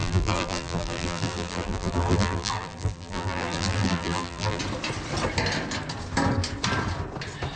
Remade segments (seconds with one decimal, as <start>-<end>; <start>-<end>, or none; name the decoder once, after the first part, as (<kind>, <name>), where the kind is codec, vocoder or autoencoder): 0.0-4.6 (vocoder, BigVGAN v2)